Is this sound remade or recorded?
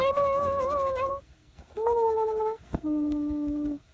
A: remade